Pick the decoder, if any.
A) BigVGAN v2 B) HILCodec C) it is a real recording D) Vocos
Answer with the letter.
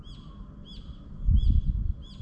C